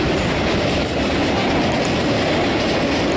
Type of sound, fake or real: real